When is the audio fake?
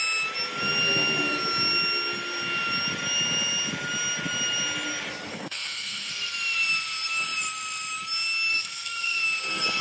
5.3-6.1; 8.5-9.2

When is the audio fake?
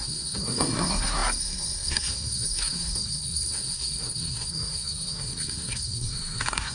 0.0-6.7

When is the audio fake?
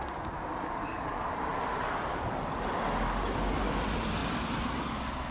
none